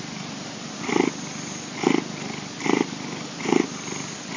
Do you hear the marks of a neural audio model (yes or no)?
no